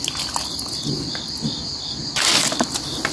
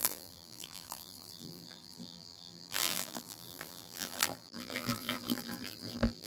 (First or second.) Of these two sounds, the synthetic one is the second